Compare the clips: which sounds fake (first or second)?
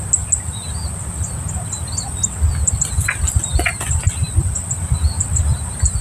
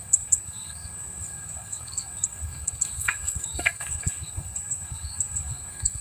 second